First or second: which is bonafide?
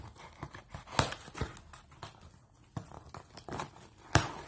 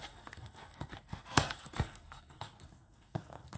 first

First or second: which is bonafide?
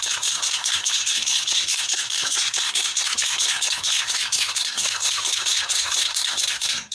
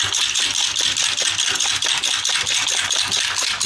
second